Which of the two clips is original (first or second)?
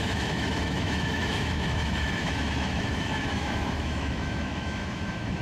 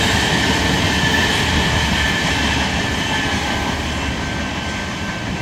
second